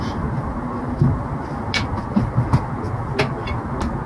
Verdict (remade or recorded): recorded